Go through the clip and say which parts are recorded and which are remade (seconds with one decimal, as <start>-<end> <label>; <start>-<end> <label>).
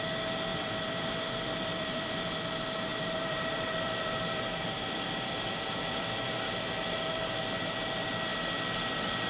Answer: 0.0-0.5 recorded; 0.5-2.4 remade; 2.4-2.9 recorded; 2.9-6.4 remade; 6.4-9.3 recorded